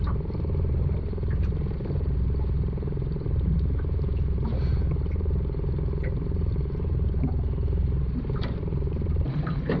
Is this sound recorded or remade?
remade